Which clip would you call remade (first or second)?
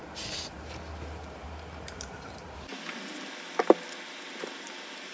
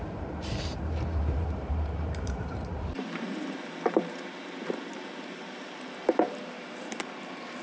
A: second